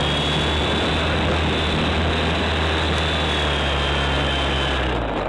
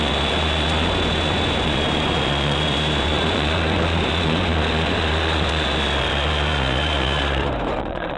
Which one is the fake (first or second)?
second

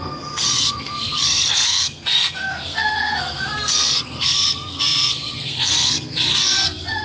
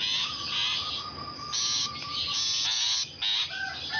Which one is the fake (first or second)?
first